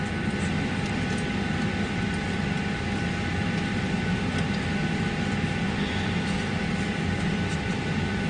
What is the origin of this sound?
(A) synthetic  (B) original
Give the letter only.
B